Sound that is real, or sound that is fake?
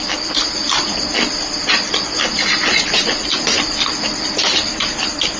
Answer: real